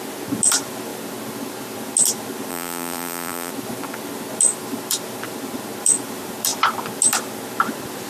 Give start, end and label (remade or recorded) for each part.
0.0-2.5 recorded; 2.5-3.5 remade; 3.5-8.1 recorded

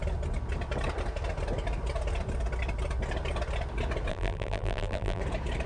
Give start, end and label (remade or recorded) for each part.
0.0-4.1 recorded; 4.1-5.2 remade; 5.2-5.7 recorded

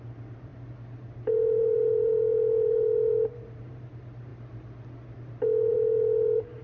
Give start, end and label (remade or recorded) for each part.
0.0-4.3 remade; 4.3-5.7 recorded; 5.7-6.6 remade

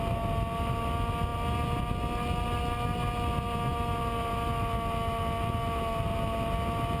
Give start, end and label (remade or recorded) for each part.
0.0-7.0 recorded

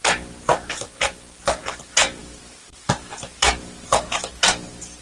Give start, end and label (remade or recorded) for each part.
0.0-0.5 recorded; 0.5-1.6 remade; 1.6-2.2 recorded; 2.2-4.3 remade; 4.3-5.0 recorded

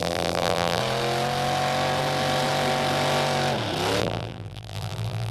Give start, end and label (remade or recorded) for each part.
0.0-0.8 remade; 0.8-4.0 recorded; 4.0-5.3 remade